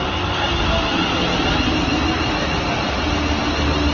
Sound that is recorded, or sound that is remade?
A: recorded